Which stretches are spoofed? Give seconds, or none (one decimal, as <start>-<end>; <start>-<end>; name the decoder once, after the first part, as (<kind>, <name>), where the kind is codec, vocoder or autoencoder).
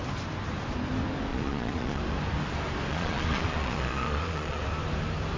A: 1.3-2.0 (vocoder, Vocos); 2.9-4.6